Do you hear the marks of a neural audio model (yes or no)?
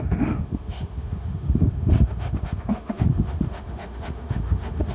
yes